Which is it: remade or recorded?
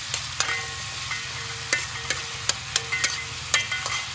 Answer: recorded